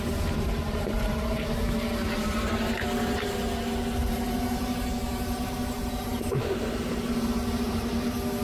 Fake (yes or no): yes